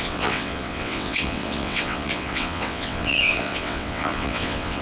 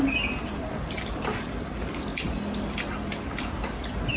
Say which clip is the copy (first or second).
first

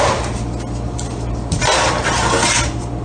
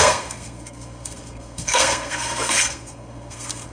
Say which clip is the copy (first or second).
second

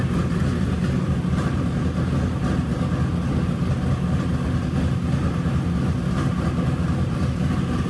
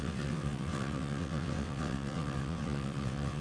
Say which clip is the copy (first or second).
second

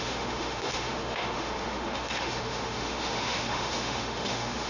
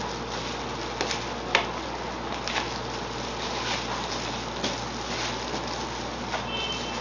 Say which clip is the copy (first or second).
first